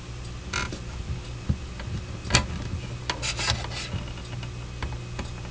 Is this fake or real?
real